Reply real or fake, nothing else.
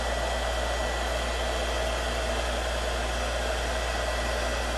real